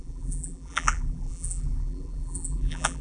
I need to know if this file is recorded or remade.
remade